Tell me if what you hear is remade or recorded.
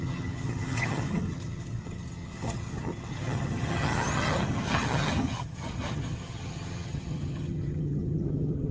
remade